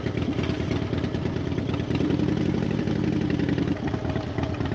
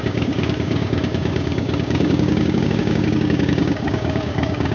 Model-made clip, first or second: second